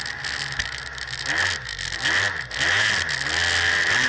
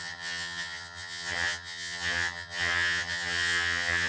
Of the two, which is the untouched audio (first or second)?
first